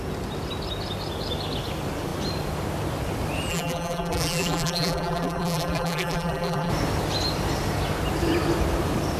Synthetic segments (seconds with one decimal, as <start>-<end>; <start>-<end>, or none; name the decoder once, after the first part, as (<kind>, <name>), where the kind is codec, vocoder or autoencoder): 3.5-6.7 (vocoder, BigVGAN v2)